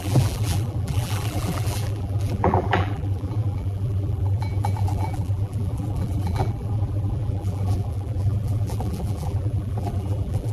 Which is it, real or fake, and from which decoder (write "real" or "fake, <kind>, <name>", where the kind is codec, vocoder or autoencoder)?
fake, vocoder, BigVGAN v2